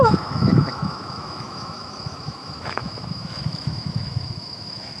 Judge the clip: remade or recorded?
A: remade